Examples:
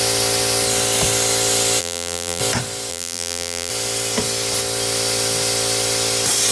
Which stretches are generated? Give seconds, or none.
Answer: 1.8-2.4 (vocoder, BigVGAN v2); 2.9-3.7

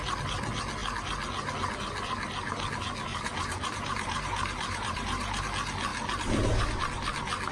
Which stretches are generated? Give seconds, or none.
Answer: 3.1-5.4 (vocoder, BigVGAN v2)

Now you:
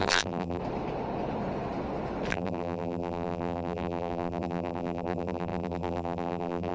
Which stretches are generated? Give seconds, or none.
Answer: 0.0-0.6 (vocoder, BigVGAN v2); 2.3-6.7

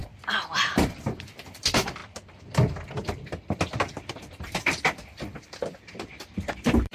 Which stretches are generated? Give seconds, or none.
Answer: 0.6-2.0 (vocoder, BigVGAN v2); 6.1-6.9